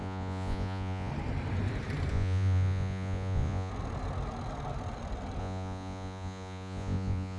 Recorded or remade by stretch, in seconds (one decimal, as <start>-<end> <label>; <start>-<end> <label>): 0.0-1.1 remade; 1.1-2.1 recorded; 2.1-3.7 remade; 3.7-5.4 recorded; 5.4-7.4 remade